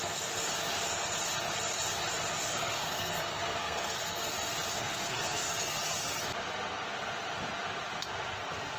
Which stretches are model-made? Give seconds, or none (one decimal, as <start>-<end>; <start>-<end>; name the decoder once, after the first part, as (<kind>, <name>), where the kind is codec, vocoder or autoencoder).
2.5-4.3 (codec, SNAC); 4.7-5.8